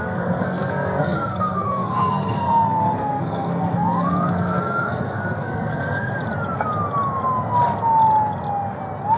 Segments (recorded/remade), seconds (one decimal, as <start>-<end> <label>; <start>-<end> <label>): 0.0-6.1 remade; 6.1-9.2 recorded